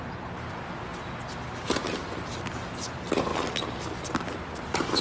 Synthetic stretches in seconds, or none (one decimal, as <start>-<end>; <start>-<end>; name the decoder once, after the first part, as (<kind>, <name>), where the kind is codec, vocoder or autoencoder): none